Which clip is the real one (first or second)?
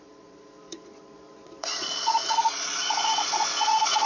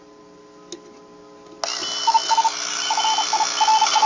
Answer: second